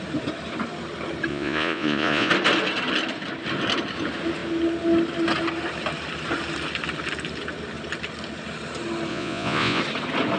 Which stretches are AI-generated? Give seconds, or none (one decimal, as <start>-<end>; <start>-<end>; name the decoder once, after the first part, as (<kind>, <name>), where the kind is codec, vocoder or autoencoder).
1.3-2.3 (vocoder, Vocos); 9.1-9.8